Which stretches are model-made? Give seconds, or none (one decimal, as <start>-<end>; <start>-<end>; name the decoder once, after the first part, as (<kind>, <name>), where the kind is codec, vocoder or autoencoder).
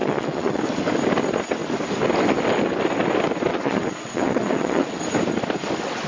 0.0-0.6 (vocoder, Vocos); 3.5-5.0